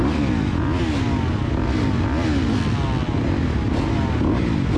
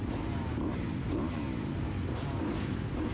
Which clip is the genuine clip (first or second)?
first